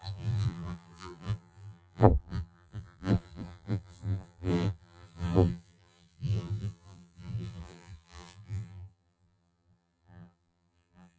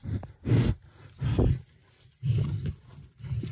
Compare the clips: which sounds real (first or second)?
second